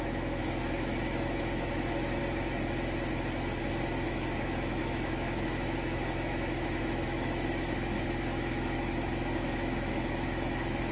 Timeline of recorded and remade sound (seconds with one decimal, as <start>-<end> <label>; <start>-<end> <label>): 0.0-2.2 remade; 2.2-3.6 recorded; 3.6-10.9 remade